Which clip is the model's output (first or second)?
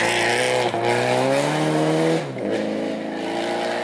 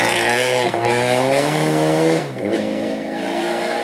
second